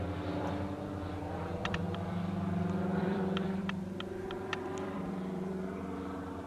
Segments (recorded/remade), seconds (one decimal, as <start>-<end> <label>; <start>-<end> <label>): 0.0-1.6 recorded; 1.6-2.2 remade; 2.2-3.0 recorded; 3.0-5.8 remade; 5.8-6.5 recorded